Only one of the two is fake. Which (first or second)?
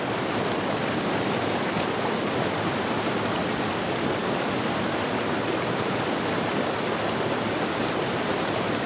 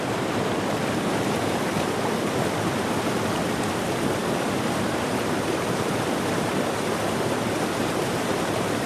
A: second